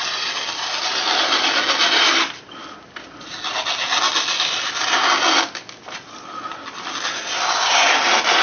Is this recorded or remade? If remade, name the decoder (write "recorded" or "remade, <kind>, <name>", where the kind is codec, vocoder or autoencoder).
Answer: recorded